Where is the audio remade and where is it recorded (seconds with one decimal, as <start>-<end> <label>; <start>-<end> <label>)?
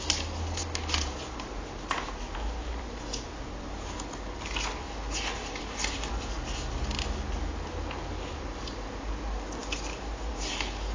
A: 0.0-10.9 recorded